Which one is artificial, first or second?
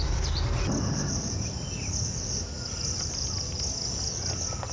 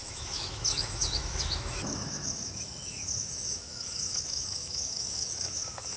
second